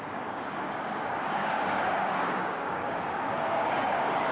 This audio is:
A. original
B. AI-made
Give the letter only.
B